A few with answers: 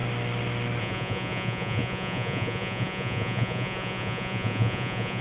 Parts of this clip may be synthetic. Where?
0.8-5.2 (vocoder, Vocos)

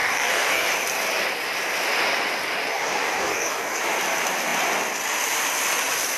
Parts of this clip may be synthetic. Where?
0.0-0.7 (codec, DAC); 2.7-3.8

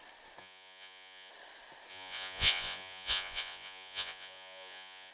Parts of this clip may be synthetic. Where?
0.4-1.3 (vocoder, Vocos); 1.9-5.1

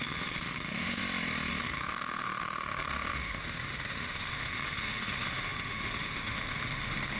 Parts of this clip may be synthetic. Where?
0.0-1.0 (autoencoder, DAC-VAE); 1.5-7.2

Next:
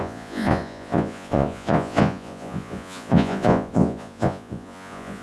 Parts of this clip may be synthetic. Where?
0.0-5.2 (vocoder, Vocos)

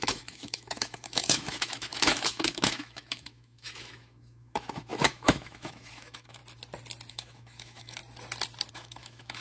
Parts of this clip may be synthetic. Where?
0.0-6.4 (autoencoder, DAC-VAE); 7.1-8.0; 8.7-9.4